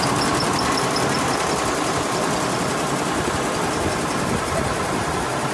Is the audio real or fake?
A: real